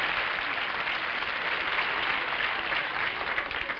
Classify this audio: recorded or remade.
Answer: recorded